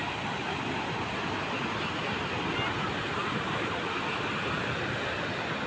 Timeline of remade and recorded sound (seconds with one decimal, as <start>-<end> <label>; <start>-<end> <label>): 0.0-5.7 recorded